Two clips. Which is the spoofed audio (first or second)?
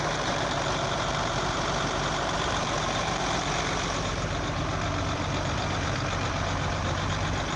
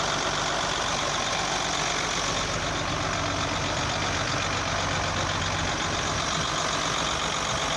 first